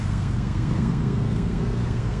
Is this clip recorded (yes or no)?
no